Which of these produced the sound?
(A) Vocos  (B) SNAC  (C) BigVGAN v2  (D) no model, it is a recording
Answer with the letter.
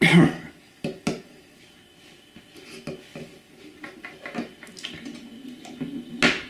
D